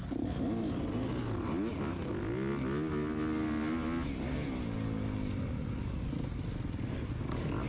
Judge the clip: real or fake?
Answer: real